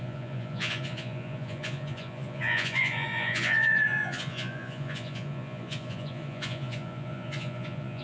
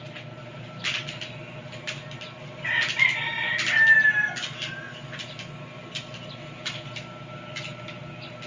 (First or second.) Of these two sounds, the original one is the second